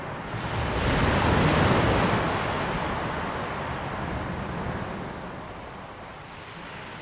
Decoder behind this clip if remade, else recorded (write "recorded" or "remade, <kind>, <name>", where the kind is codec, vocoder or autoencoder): recorded